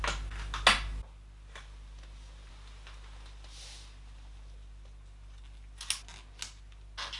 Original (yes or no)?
yes